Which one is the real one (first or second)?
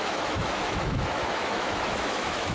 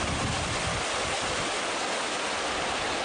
second